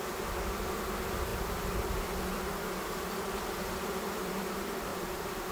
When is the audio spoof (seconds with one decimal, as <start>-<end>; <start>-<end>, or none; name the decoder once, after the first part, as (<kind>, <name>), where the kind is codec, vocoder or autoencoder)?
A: 4.9-5.5 (vocoder, BigVGAN v2)